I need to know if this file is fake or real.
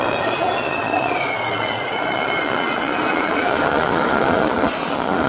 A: fake